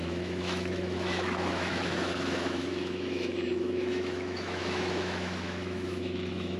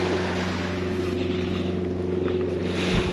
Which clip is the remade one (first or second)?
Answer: first